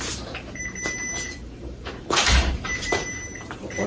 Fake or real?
fake